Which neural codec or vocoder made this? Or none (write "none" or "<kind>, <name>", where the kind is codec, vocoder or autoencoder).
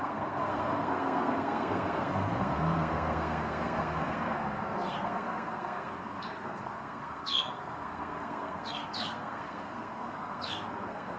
codec, SNAC